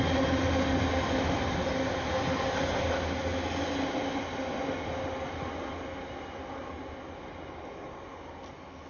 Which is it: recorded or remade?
recorded